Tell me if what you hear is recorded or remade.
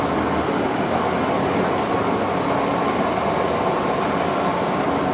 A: recorded